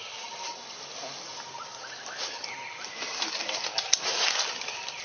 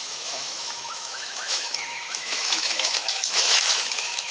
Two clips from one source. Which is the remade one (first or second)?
second